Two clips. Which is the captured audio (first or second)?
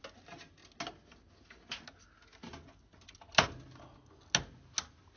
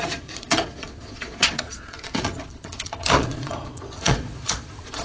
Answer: first